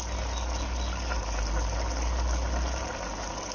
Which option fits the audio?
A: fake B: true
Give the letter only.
B